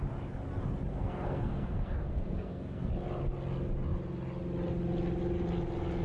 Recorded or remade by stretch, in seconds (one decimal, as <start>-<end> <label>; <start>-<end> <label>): 0.0-0.9 recorded; 0.9-2.9 remade; 2.9-6.0 recorded